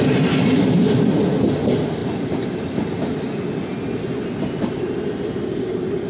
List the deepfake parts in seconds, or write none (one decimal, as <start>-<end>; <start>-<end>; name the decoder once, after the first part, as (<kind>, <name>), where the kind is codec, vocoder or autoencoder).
none